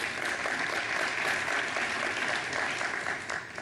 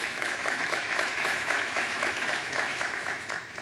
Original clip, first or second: first